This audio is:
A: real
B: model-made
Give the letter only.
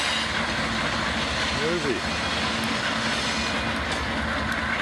A